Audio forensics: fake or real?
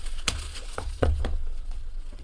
fake